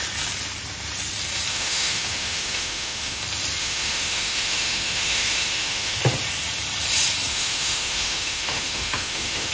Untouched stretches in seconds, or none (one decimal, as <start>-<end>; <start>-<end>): 0.0-1.5; 3.2-3.6; 6.0-7.3

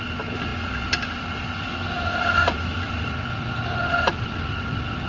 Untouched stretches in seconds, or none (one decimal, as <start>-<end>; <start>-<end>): 0.0-5.1

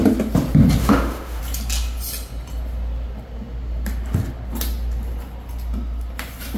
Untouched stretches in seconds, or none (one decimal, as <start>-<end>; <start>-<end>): 0.0-0.8; 1.4-6.6